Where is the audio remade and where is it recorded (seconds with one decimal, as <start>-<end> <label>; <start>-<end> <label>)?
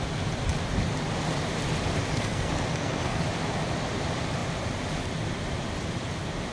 0.0-2.1 recorded; 2.1-3.2 remade; 3.2-6.5 recorded